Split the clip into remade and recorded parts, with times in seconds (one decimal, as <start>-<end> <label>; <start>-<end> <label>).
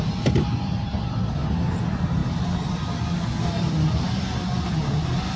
0.0-5.4 recorded